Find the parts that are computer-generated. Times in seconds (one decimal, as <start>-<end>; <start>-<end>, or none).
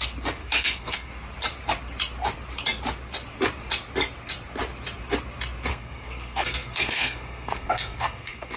0.4-1.1; 5.7-8.6